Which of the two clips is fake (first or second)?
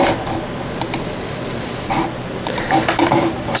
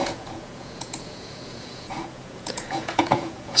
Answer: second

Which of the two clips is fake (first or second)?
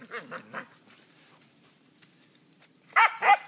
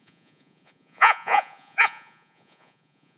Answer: second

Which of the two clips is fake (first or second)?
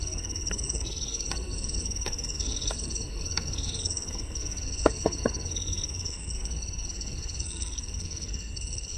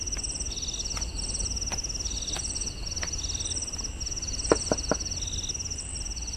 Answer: first